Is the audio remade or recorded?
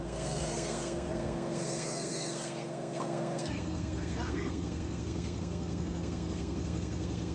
remade